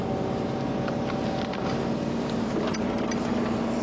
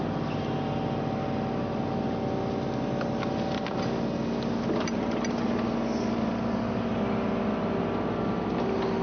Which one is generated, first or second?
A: first